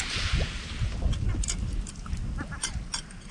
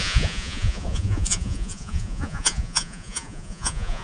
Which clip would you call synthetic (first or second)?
second